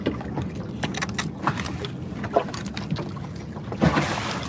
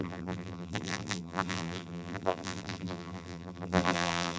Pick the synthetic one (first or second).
second